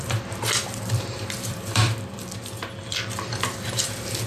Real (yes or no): no